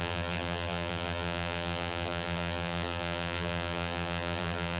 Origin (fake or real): fake